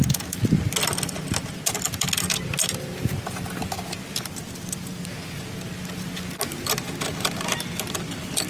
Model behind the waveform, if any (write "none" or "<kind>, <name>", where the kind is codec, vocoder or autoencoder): none